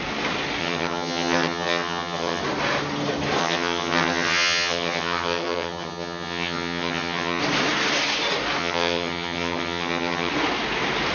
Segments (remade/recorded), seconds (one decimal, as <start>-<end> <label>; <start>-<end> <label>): 0.0-0.6 recorded; 0.6-2.4 remade; 2.4-3.4 recorded; 3.4-7.4 remade; 7.4-8.6 recorded; 8.6-10.3 remade; 10.3-11.1 recorded